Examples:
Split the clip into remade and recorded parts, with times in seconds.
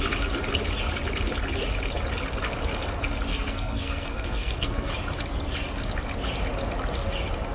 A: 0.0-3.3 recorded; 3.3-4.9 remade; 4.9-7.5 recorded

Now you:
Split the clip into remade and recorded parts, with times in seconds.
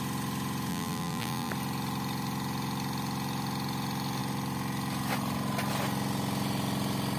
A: 0.0-0.7 recorded; 0.7-1.5 remade; 1.5-7.2 recorded